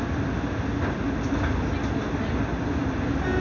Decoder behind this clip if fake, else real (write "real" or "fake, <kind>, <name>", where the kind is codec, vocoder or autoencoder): real